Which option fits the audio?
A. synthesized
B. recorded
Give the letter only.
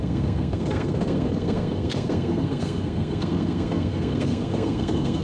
A